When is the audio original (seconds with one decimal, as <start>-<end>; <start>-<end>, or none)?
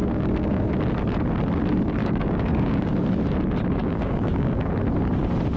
0.6-2.0; 2.9-3.8; 4.7-5.6